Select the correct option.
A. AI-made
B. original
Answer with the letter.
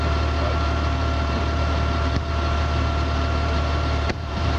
A